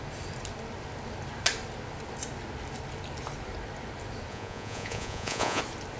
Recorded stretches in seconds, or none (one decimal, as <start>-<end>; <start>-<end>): 0.0-4.3; 5.6-6.0